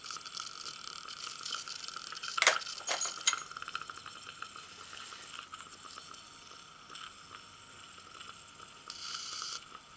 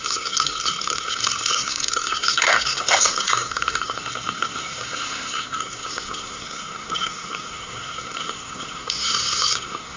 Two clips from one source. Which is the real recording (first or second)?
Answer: first